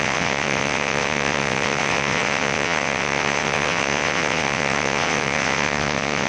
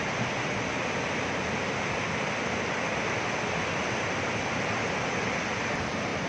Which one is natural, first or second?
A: second